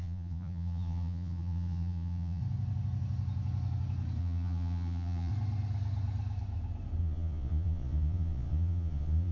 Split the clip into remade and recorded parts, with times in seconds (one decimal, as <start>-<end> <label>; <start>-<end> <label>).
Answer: 0.0-2.4 remade; 2.4-4.2 recorded; 4.2-5.3 remade; 5.3-7.0 recorded; 7.0-9.3 remade